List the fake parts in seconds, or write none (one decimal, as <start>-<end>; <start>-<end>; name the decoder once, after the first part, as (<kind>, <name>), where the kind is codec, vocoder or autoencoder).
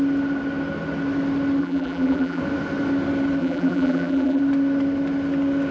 1.6-2.4 (vocoder, BigVGAN v2); 3.4-4.4